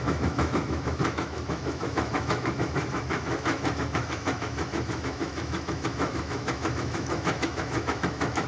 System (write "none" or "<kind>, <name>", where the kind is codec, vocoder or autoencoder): autoencoder, DAC-VAE